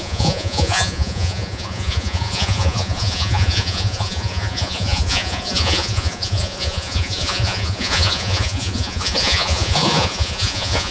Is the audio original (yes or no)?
no